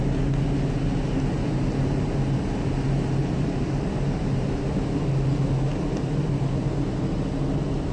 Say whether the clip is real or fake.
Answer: real